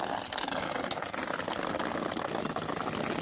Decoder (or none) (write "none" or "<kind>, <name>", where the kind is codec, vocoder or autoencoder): none